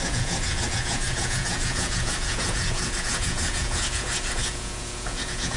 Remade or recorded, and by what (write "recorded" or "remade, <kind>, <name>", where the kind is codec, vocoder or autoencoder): remade, vocoder, Vocos